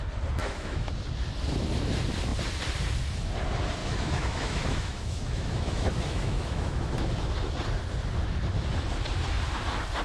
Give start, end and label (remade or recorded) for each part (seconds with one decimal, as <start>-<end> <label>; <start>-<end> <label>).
0.0-0.4 recorded; 0.4-0.9 remade; 0.9-3.8 recorded; 3.8-7.1 remade; 7.1-10.0 recorded